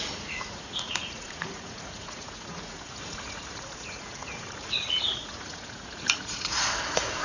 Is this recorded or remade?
remade